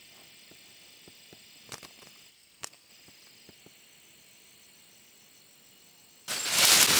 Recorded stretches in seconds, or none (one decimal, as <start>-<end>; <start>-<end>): 0.0-2.3; 2.9-7.0